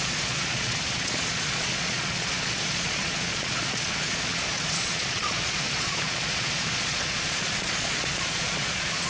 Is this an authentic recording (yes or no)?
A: no